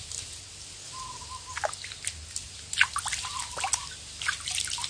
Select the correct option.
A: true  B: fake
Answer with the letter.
A